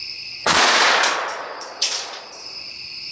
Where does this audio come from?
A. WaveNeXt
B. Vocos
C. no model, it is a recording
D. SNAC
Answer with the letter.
B